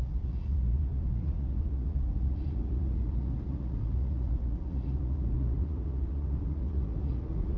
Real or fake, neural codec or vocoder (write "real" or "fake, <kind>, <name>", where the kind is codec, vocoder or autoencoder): fake, vocoder, Vocos